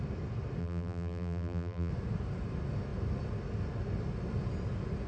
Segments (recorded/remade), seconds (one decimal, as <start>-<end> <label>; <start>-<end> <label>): 0.0-0.6 recorded; 0.6-1.9 remade; 1.9-5.1 recorded